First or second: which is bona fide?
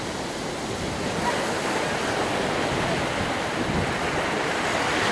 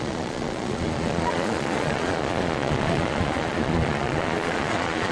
first